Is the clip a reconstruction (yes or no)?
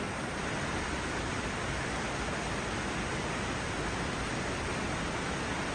no